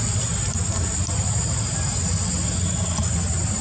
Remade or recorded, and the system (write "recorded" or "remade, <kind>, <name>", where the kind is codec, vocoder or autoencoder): recorded